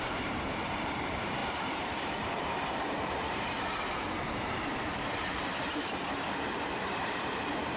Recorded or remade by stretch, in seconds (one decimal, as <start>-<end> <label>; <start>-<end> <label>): 0.0-7.8 remade